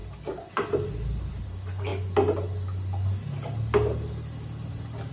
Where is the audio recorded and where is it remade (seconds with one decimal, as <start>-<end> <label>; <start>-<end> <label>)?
0.0-1.3 recorded; 1.3-1.9 remade; 1.9-5.1 recorded